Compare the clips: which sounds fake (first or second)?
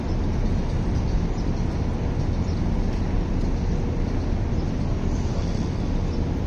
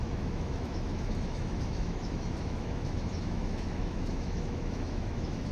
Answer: second